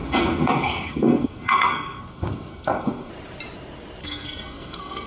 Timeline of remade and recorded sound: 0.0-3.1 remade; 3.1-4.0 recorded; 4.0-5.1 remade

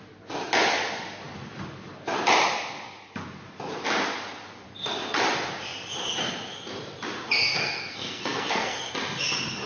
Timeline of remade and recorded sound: 0.0-7.4 recorded; 7.4-8.9 remade; 8.9-9.7 recorded

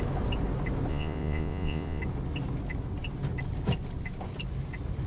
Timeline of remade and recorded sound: 0.0-0.9 recorded; 0.9-2.0 remade; 2.0-5.1 recorded

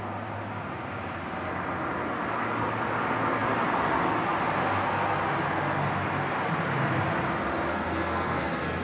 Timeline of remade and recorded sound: 0.0-7.7 recorded; 7.7-8.8 remade

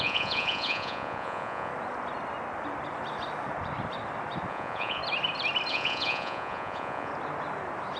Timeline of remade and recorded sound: 0.0-1.7 remade; 1.7-4.5 recorded; 4.5-5.0 remade; 5.0-5.7 recorded; 5.7-7.1 remade; 7.1-8.0 recorded